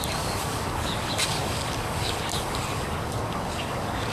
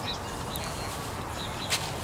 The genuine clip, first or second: second